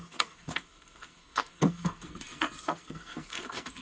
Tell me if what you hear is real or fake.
fake